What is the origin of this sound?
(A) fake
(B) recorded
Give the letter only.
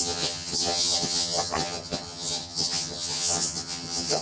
A